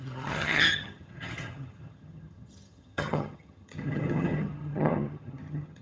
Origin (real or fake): fake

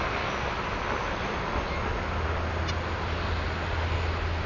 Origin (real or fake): real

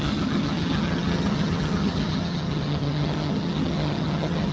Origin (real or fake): fake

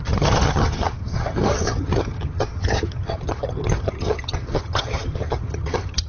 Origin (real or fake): fake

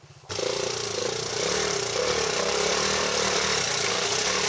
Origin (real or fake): real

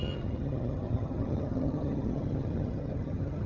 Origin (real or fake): fake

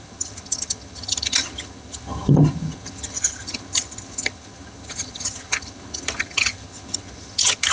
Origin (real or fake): fake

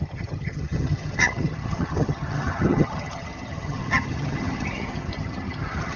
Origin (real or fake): fake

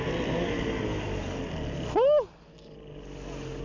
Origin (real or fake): real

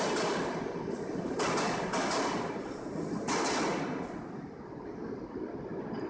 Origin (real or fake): real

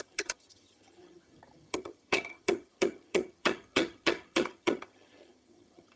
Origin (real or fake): fake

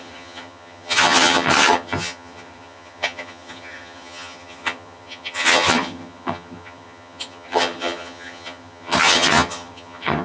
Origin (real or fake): fake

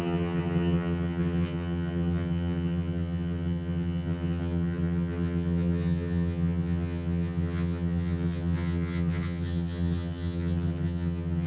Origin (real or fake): fake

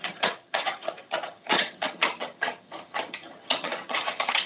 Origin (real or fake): fake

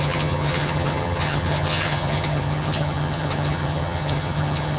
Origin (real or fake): fake